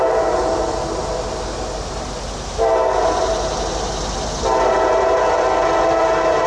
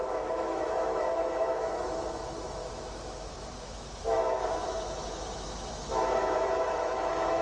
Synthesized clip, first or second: second